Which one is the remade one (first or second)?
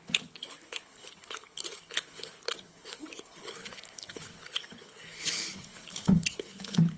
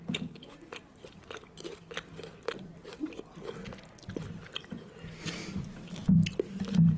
first